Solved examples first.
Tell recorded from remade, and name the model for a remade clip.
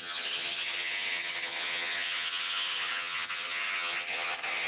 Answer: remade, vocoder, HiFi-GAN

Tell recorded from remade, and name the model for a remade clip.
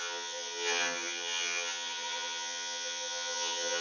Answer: remade, vocoder, HiFi-GAN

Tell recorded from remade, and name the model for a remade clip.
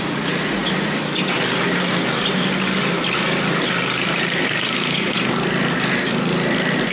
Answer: recorded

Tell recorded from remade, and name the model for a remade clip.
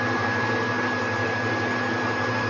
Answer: recorded